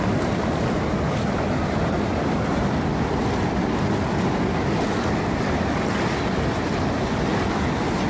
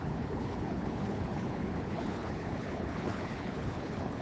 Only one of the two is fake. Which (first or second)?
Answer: second